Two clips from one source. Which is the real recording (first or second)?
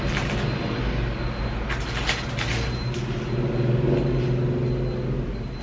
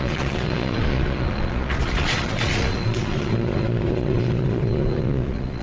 first